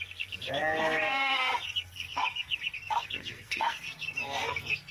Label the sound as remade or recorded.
remade